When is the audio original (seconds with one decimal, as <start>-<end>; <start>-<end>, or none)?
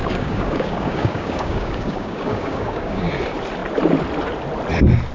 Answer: 3.1-5.1